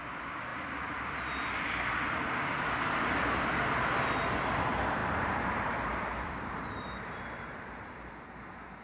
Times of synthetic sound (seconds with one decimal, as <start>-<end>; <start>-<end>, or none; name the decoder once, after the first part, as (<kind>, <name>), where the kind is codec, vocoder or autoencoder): 5.0-8.1 (vocoder, BigVGAN v2)

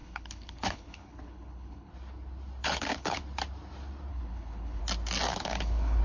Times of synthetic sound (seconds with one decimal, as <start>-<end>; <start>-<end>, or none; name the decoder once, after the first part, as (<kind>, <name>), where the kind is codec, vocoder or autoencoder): 0.0-1.9 (codec, HILCodec); 2.6-3.2; 4.1-4.8; 5.3-6.0